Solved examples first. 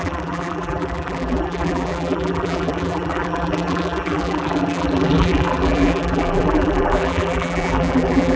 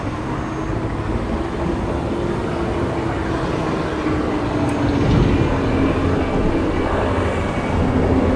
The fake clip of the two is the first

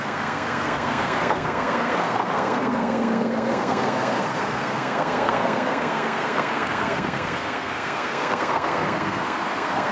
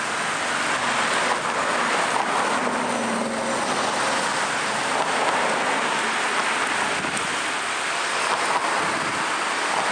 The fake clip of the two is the first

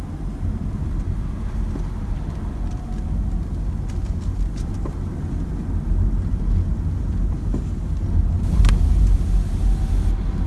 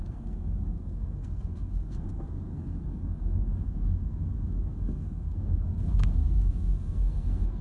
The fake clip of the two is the second